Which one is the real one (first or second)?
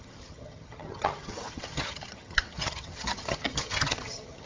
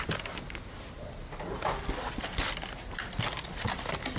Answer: second